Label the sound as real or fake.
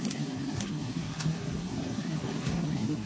fake